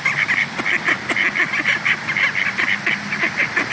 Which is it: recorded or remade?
recorded